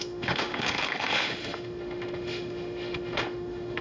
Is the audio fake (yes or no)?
yes